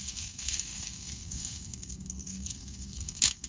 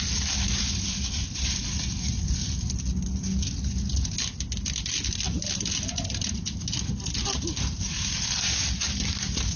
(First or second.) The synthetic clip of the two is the first